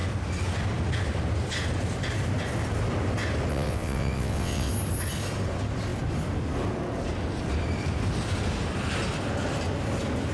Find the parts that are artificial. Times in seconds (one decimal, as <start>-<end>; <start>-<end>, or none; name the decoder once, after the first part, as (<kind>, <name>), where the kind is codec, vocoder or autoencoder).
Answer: 3.5-4.7 (vocoder, WaveNeXt)